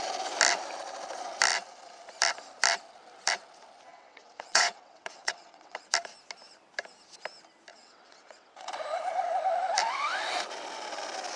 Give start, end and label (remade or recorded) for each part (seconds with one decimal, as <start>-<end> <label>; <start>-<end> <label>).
0.0-3.9 recorded; 3.9-5.9 remade; 5.9-7.7 recorded; 7.7-8.7 remade; 8.7-11.4 recorded